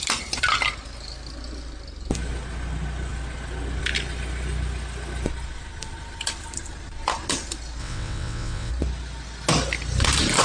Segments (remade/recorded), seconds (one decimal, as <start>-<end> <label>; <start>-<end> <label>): 0.0-7.8 recorded; 7.8-8.7 remade; 8.7-10.4 recorded